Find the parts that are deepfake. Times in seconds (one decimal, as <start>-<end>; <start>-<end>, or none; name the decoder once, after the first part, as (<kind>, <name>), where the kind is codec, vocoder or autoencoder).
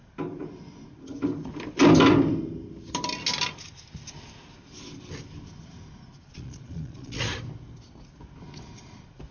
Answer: 6.3-7.2 (vocoder, Vocos)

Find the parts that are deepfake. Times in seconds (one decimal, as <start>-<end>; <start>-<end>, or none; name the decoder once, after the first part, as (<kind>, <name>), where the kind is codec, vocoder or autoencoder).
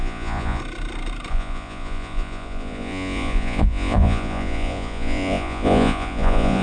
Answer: 0.0-0.6 (vocoder, Vocos); 1.3-6.6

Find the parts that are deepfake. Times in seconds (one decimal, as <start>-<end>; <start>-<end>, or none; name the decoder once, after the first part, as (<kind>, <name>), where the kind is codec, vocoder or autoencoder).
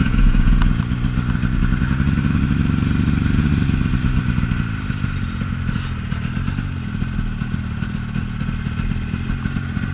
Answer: 0.0-0.8 (vocoder, Vocos)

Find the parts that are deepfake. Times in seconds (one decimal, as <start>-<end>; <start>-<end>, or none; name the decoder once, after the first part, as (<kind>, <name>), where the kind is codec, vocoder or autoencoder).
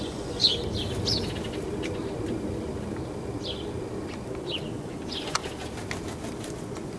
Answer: 0.0-0.5 (vocoder, Vocos); 4.7-5.4; 6.5-7.0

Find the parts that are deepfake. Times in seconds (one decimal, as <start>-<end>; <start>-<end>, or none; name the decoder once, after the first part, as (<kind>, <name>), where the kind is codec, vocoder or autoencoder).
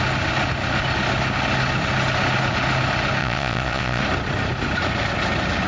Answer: 3.2-4.0 (vocoder, Vocos)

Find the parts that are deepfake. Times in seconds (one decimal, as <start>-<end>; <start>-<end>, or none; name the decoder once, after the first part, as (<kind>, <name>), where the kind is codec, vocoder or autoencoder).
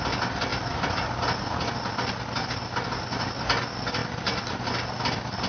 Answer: none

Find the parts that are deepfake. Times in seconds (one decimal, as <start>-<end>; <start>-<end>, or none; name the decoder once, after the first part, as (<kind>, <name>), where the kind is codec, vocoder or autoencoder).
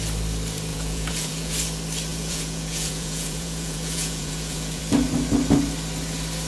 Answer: 0.7-1.5 (vocoder, Vocos); 2.1-4.8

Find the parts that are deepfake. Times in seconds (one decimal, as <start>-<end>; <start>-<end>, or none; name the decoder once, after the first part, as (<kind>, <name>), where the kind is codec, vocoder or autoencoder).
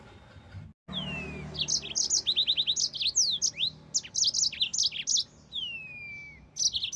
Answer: none